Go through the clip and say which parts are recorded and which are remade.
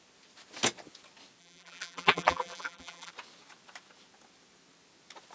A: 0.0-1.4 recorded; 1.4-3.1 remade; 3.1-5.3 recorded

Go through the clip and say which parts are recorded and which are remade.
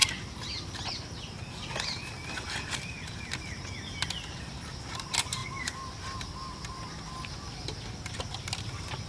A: 0.0-9.1 recorded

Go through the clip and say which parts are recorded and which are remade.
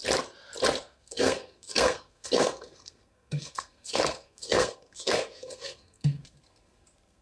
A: 0.0-0.8 recorded; 0.8-7.2 remade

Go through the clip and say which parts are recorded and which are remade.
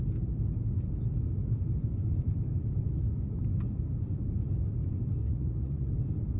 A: 0.0-5.2 recorded; 5.2-5.9 remade; 5.9-6.4 recorded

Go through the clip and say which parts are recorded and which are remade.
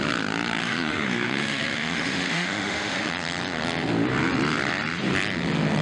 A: 0.0-0.6 recorded; 0.6-3.1 remade; 3.1-5.8 recorded